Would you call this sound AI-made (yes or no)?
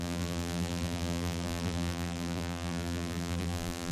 yes